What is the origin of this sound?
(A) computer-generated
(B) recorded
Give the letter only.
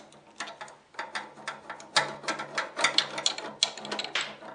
B